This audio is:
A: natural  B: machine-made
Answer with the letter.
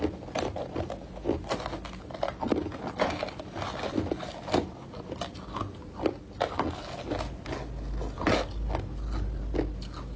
A